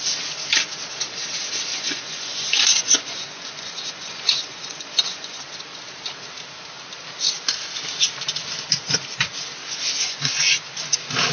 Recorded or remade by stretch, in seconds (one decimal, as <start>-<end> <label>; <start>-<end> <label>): 0.0-1.7 recorded; 1.7-5.4 remade; 5.4-9.6 recorded; 9.6-10.3 remade; 10.3-11.3 recorded